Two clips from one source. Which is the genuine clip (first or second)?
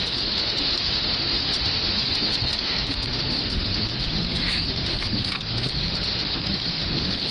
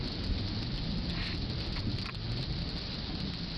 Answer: second